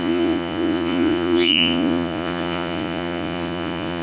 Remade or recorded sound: remade